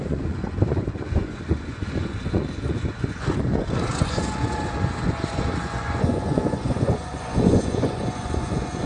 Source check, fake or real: fake